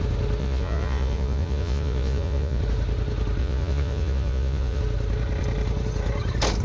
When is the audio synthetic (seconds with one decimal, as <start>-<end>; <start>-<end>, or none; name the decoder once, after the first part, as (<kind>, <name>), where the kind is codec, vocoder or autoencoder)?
0.4-2.6 (vocoder, Vocos); 3.4-4.8